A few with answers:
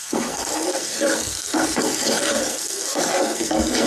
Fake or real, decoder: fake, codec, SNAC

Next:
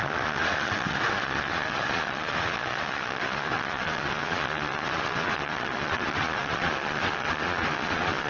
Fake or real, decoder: fake, vocoder, Vocos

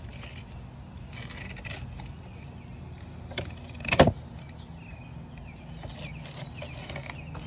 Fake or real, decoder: real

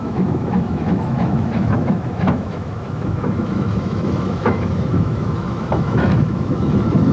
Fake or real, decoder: fake, autoencoder, DAC-VAE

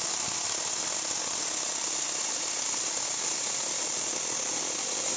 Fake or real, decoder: real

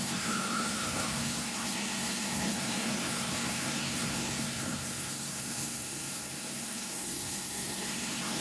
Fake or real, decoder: fake, codec, SNAC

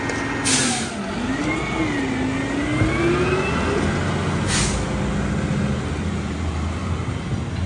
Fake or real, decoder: real